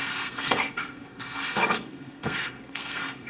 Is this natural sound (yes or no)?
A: no